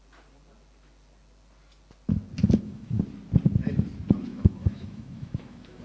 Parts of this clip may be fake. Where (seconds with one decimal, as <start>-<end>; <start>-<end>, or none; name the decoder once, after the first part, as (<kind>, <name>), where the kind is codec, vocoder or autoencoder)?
2.4-3.0 (autoencoder, DAC-VAE); 4.3-5.8